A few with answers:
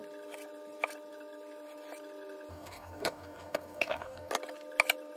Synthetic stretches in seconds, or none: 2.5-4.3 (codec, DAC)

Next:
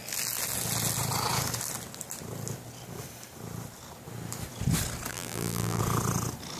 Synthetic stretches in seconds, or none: 5.1-5.8 (vocoder, BigVGAN v2)